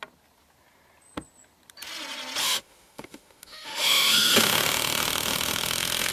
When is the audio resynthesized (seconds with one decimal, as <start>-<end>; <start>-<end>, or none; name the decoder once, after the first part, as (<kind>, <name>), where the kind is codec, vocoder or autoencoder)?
2.4-6.1 (autoencoder, DAC-VAE)